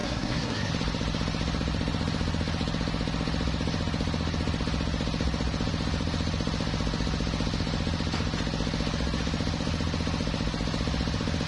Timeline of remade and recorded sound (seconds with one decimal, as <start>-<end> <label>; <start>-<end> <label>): 0.0-0.7 remade; 0.7-11.5 recorded